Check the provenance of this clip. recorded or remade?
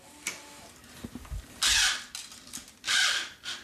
recorded